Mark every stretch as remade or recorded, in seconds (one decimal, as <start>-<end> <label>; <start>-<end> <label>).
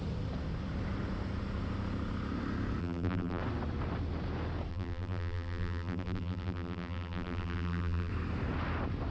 0.0-2.8 recorded; 2.8-3.4 remade; 3.4-4.7 recorded; 4.7-8.1 remade; 8.1-9.1 recorded